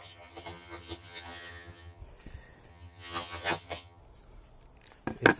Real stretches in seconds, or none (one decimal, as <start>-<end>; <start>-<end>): 2.0-2.7; 4.0-5.4